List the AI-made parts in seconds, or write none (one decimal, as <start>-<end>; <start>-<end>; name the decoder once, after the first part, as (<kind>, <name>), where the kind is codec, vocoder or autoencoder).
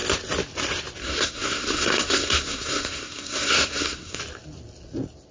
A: 1.0-4.2 (codec, SNAC)